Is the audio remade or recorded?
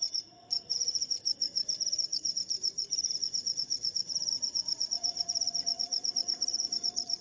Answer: remade